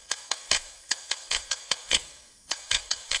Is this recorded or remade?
remade